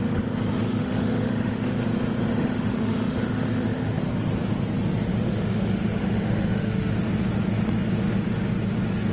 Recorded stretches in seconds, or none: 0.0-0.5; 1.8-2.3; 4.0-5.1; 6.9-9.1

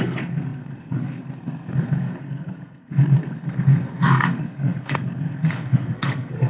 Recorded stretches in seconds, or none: none

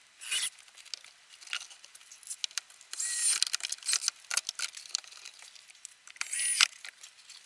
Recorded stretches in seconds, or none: 0.0-7.5

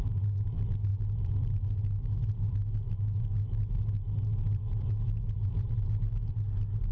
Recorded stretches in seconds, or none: 0.0-4.3; 6.3-6.9

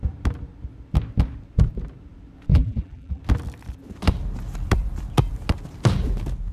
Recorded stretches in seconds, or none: 0.0-2.5; 3.2-6.5

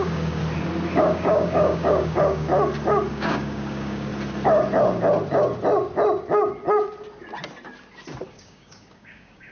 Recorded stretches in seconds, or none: 0.4-1.0; 2.5-3.1; 4.1-8.3

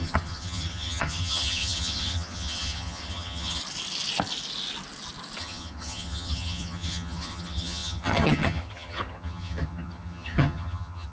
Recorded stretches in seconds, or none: 3.6-5.4

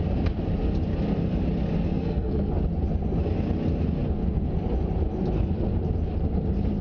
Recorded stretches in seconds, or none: 0.0-1.9; 2.5-6.8